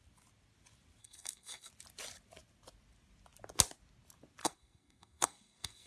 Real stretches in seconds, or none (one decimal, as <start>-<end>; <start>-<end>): 0.0-1.0; 1.7-4.4